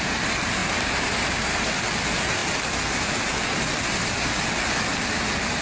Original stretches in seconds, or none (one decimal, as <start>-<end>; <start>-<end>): 0.0-0.6; 1.7-5.6

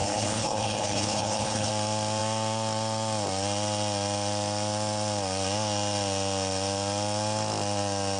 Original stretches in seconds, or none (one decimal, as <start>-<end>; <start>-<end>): 1.7-8.2

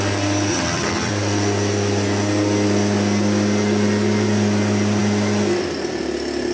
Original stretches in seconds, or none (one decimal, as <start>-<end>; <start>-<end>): 0.0-0.5; 1.1-6.5

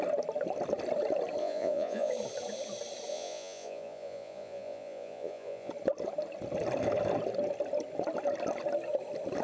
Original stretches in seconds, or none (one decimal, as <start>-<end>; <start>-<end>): 0.0-1.4; 2.1-3.1; 5.7-9.4

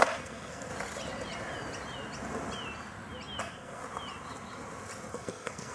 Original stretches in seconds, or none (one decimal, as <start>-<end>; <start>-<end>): 0.7-3.4; 3.8-5.1

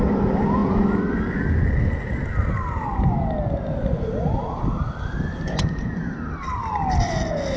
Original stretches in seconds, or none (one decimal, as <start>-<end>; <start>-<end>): 0.0-7.6

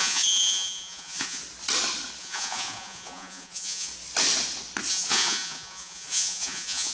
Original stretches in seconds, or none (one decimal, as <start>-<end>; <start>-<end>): 1.4-2.2; 3.9-4.9

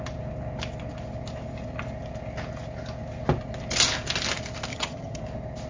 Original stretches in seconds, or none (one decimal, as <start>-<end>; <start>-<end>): 0.0-4.7; 5.2-5.7